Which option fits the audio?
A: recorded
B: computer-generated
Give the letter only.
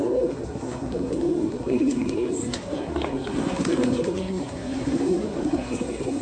B